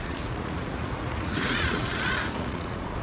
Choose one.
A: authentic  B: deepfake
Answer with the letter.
B